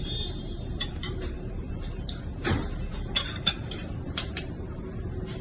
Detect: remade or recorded remade